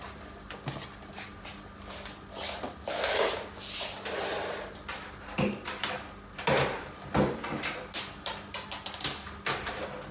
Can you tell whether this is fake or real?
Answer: real